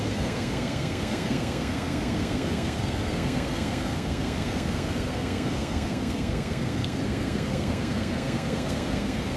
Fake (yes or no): yes